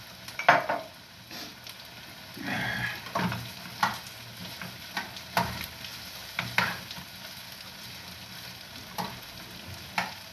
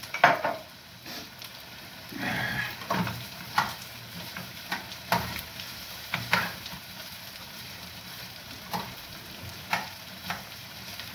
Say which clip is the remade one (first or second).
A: second